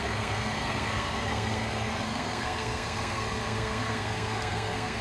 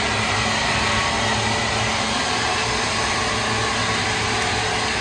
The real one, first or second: second